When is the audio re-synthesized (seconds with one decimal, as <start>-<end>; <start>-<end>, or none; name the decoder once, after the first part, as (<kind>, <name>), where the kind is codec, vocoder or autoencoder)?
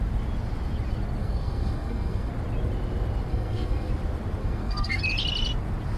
1.2-2.3 (codec, SNAC); 3.3-3.9; 4.4-5.0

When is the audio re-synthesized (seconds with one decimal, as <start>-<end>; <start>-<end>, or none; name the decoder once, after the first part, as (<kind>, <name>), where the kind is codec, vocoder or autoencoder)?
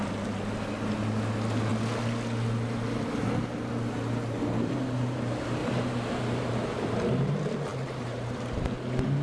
5.6-6.2 (vocoder, BigVGAN v2); 7.7-8.7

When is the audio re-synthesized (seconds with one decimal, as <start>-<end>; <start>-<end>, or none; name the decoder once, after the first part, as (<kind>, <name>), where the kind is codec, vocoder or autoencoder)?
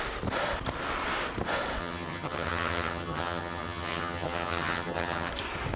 1.8-5.3 (vocoder, HiFi-GAN)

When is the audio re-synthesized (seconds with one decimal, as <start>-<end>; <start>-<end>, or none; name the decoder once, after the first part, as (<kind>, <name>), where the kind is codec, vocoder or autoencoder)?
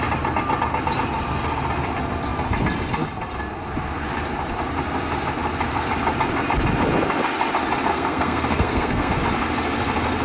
7.9-9.1 (codec, SNAC)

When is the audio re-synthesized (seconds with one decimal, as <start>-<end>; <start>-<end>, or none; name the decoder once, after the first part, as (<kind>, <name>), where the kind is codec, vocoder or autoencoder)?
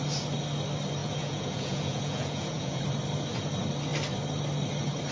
1.0-2.8 (vocoder, Vocos)